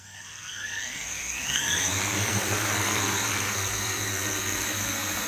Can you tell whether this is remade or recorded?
remade